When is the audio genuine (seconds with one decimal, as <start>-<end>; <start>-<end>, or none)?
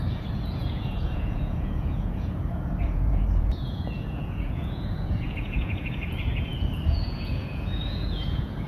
none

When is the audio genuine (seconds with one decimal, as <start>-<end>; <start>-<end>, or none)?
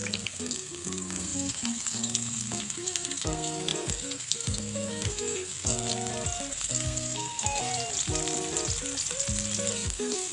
5.9-6.5; 7.7-9.7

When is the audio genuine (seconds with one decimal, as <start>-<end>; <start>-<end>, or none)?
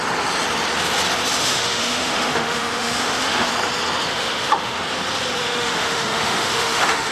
0.0-1.4; 3.5-4.1; 4.8-5.4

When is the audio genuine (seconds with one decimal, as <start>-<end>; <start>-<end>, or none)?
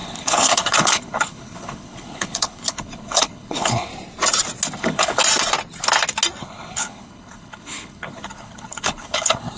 3.9-4.8; 5.2-6.4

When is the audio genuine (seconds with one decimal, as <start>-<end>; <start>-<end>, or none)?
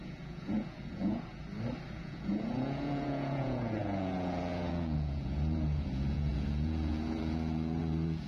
1.4-1.9